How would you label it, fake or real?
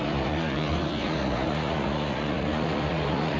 fake